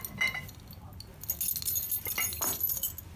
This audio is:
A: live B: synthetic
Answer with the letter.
A